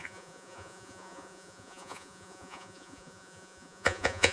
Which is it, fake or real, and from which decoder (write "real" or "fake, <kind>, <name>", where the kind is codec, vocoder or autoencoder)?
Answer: fake, vocoder, Vocos